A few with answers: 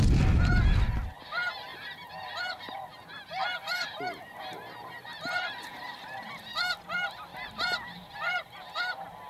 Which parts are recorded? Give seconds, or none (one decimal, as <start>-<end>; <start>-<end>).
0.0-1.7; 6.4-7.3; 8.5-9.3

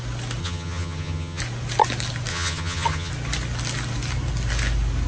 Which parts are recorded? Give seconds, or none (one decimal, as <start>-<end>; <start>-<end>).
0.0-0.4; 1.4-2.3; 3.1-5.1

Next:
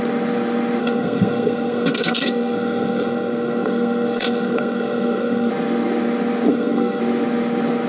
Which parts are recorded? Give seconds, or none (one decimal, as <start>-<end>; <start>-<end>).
0.0-0.8; 5.5-6.5; 7.0-7.9